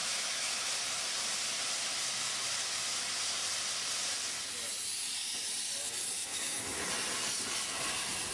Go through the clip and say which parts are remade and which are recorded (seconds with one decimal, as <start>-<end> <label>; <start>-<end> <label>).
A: 0.0-0.7 remade; 0.7-6.2 recorded; 6.2-6.9 remade; 6.9-8.3 recorded